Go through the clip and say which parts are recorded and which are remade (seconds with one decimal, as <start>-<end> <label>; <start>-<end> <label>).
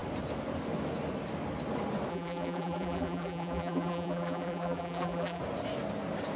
0.0-2.1 recorded; 2.1-5.4 remade; 5.4-6.4 recorded